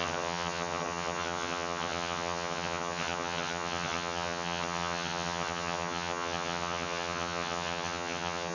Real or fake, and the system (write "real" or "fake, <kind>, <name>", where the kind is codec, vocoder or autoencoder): fake, vocoder, HiFi-GAN